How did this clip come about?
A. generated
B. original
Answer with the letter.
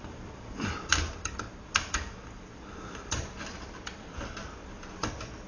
A